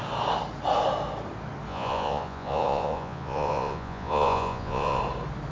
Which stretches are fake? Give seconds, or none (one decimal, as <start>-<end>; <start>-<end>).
1.7-5.0